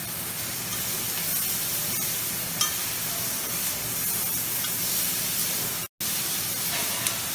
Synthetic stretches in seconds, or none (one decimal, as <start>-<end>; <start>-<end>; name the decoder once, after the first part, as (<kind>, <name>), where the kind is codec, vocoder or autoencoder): none